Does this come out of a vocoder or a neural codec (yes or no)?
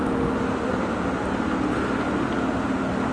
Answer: no